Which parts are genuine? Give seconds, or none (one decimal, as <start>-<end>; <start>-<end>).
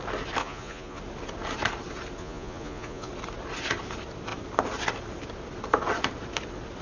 0.0-0.4; 1.0-2.2; 3.1-6.8